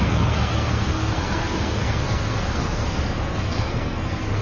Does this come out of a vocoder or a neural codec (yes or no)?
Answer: yes